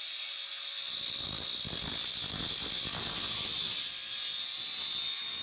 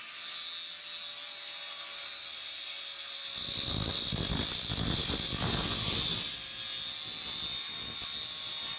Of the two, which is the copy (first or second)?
first